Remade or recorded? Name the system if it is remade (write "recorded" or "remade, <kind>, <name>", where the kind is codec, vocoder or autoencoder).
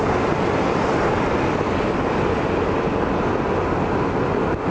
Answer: recorded